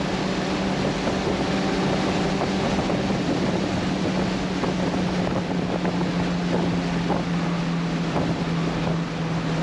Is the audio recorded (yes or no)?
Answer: yes